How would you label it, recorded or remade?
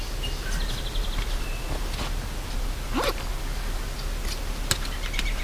recorded